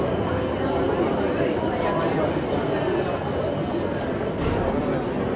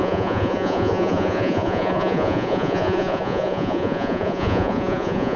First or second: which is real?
first